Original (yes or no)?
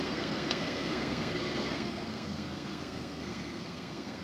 no